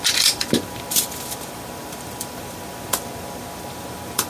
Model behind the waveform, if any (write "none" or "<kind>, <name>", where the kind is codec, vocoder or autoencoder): vocoder, BigVGAN v2